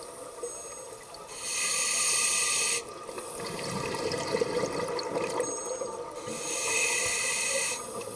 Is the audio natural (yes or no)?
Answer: yes